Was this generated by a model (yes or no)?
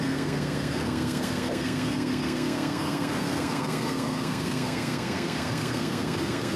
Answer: yes